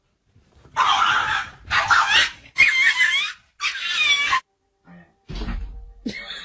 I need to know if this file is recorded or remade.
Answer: remade